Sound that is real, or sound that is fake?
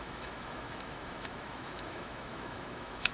fake